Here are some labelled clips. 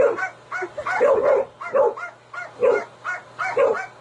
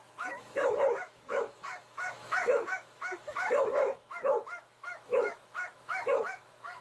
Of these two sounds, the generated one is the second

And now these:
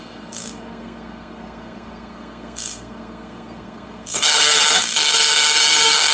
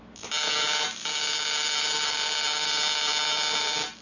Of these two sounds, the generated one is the first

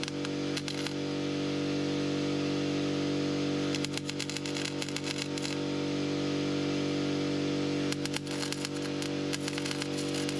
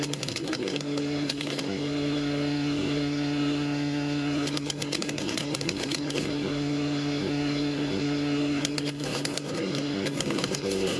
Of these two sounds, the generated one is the second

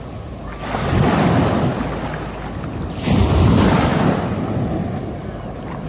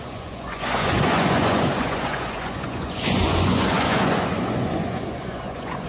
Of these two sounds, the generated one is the second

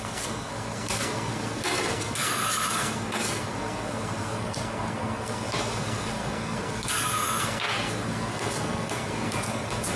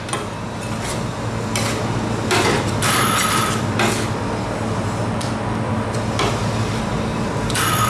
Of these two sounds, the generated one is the first